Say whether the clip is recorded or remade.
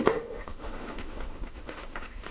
remade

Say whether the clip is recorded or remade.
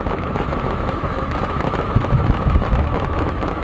remade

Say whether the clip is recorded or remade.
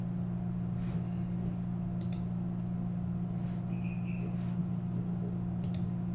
recorded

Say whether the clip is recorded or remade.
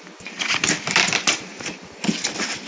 recorded